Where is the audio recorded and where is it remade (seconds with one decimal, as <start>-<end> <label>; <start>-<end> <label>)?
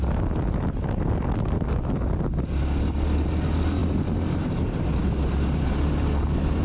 0.0-6.6 recorded